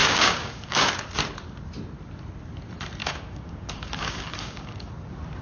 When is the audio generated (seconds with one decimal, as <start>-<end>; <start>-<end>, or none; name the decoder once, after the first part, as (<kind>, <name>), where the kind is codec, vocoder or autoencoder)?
0.0-0.9 (codec, DAC); 3.0-4.9